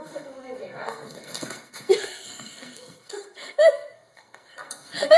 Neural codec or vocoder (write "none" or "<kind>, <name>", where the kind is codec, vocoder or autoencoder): codec, SNAC